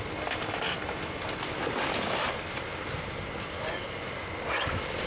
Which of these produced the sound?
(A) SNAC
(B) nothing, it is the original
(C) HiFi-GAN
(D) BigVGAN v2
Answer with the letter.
B